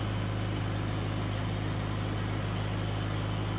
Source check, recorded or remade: recorded